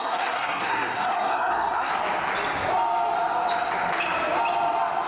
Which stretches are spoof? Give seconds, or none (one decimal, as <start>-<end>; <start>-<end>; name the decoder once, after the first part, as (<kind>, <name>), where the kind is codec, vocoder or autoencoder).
0.0-1.9 (codec, SNAC)